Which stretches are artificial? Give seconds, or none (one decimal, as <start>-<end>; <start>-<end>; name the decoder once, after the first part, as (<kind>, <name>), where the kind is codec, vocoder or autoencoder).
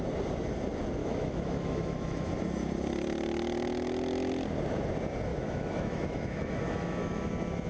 1.0-2.3 (autoencoder, DAC-VAE); 5.3-7.3